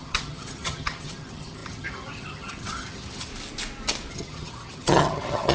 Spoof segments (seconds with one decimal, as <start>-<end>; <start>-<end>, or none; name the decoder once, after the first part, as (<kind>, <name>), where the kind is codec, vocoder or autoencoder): 0.0-3.3 (vocoder, HiFi-GAN); 4.1-5.5